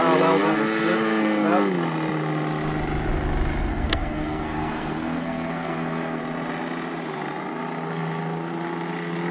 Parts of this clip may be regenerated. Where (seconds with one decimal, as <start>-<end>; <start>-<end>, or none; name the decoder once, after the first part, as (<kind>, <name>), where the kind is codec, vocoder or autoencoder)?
3.7-6.2 (codec, SNAC)